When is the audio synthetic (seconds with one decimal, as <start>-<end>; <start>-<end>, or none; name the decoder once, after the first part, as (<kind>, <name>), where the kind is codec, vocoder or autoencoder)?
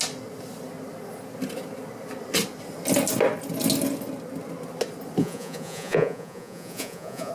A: 5.2-7.3 (vocoder, Vocos)